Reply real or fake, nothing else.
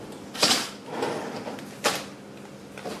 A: real